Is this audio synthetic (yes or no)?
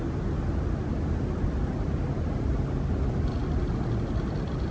no